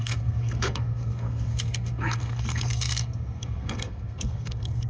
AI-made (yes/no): yes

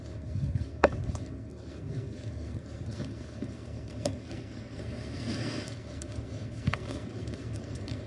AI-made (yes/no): yes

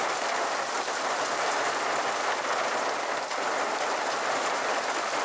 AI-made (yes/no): no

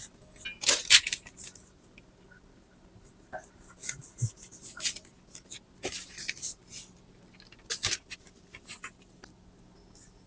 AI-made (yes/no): no